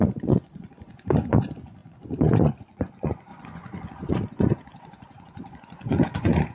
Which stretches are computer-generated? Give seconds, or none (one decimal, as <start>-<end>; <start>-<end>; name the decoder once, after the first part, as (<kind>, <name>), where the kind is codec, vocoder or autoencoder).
0.0-6.5 (vocoder, Vocos)